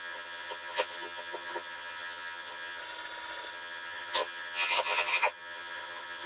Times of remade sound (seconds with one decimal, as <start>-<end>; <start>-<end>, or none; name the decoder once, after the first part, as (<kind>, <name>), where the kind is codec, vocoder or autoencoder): 0.0-2.8 (vocoder, HiFi-GAN); 3.5-6.3